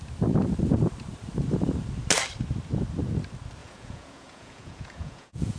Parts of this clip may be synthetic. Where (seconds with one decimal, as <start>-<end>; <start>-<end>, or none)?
3.6-5.6